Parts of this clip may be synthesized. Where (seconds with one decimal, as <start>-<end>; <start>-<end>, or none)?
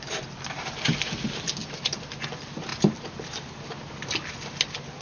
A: none